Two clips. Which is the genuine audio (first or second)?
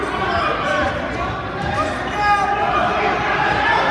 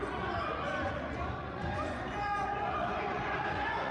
first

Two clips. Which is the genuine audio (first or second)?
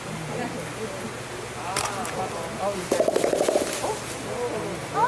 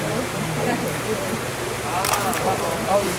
first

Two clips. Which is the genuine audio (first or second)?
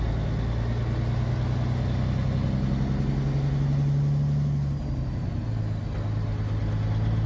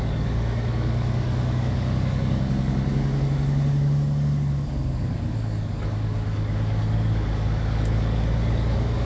first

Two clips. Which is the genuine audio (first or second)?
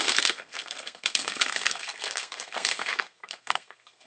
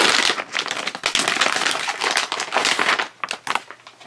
second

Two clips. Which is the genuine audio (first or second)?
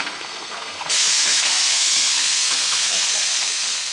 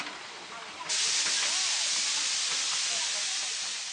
second